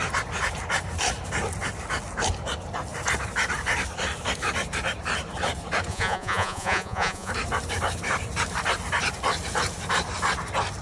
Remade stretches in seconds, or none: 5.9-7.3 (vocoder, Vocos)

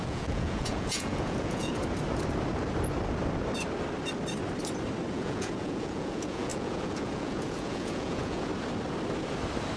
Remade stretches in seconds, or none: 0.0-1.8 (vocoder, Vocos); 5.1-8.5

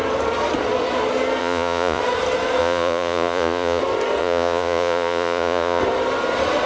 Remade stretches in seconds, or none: 1.4-2.0 (vocoder, Vocos); 2.6-3.8; 4.2-5.8

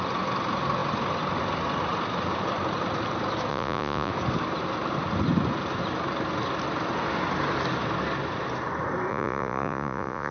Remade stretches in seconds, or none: 3.5-4.1 (vocoder, Vocos); 9.1-10.3

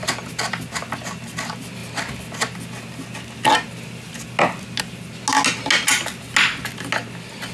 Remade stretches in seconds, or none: none

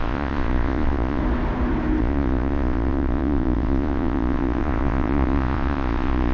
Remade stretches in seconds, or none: 0.0-1.2 (vocoder, Vocos); 2.0-6.3